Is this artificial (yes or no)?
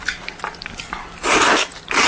no